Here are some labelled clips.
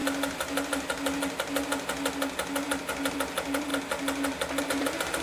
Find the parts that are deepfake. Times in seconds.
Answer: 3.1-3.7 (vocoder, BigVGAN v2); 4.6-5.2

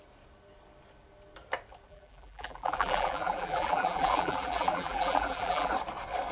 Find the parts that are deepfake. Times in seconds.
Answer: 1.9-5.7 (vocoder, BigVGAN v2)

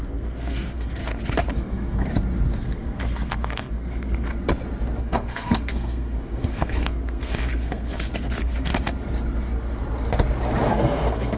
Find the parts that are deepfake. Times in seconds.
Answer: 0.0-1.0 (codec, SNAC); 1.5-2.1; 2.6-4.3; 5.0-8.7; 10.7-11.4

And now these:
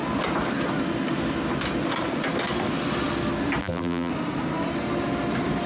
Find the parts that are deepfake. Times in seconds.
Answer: 3.6-4.1 (vocoder, BigVGAN v2)

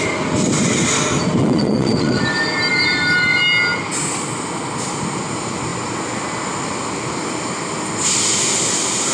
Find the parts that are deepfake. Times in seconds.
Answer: 1.4-2.2 (vocoder, WaveNeXt)